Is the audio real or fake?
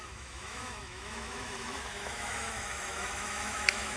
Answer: fake